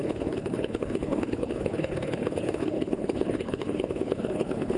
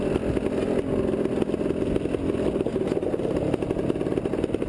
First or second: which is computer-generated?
first